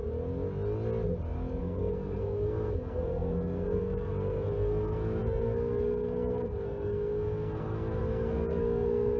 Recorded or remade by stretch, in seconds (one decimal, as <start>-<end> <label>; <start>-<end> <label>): 0.0-1.6 recorded; 1.6-9.2 remade